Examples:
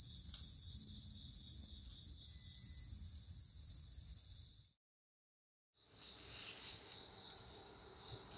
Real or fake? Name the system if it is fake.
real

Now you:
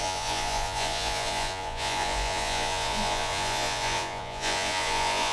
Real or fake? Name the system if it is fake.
fake, vocoder, Vocos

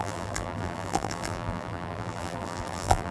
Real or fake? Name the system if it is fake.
fake, vocoder, BigVGAN v2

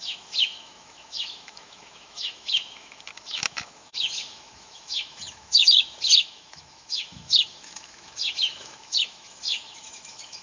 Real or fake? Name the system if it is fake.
fake, autoencoder, DAC-VAE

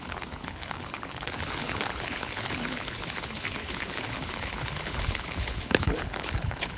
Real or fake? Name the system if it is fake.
fake, codec, HILCodec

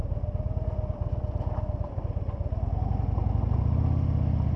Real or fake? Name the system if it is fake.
real